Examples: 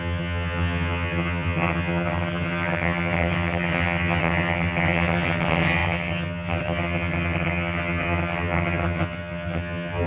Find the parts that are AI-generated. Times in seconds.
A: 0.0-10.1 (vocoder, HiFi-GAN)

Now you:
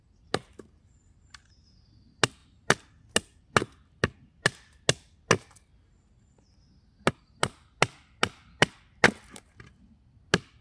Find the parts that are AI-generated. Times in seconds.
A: none

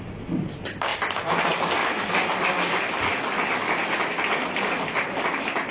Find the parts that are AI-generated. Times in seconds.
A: none

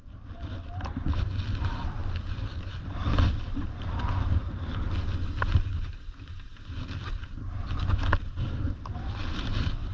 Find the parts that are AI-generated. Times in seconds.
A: none

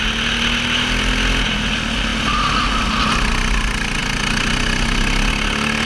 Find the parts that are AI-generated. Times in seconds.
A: none

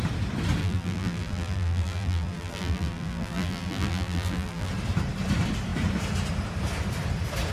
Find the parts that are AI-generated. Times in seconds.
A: 0.6-4.7 (vocoder, BigVGAN v2)

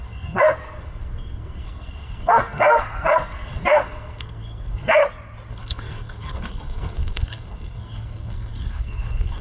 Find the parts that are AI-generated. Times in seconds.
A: 0.0-5.0 (codec, SNAC); 5.5-9.4

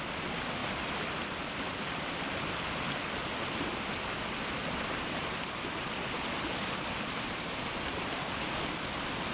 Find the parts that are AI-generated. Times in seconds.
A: none